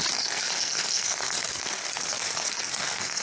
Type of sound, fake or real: fake